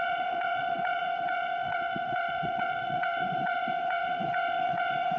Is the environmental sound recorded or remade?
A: remade